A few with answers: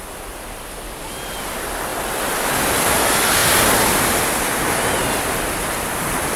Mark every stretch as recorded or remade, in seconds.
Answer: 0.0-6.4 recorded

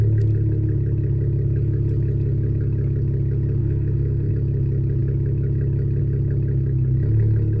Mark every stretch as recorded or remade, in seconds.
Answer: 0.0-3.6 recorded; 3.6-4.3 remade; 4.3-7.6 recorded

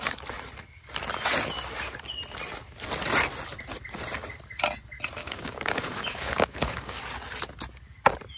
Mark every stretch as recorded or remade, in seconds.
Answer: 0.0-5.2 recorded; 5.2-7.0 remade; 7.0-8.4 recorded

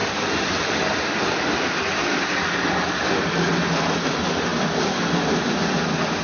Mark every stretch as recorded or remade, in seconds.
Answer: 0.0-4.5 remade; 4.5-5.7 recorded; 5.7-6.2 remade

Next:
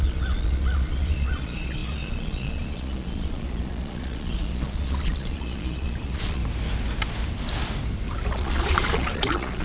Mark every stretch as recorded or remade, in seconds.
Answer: 0.0-6.4 remade; 6.4-8.3 recorded; 8.3-9.6 remade